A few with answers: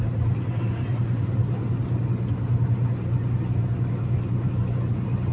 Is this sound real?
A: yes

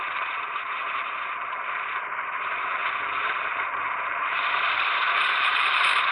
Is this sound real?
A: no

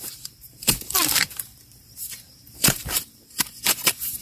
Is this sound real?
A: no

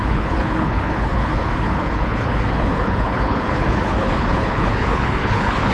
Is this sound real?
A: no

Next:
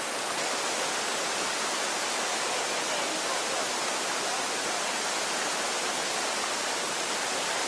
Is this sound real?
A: yes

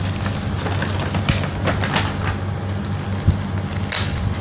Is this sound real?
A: yes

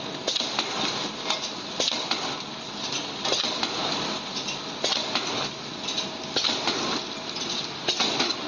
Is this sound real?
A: yes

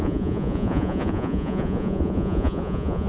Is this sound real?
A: no